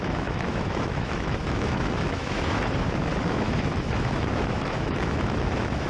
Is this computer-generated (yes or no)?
yes